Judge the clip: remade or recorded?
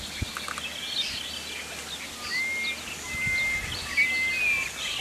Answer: recorded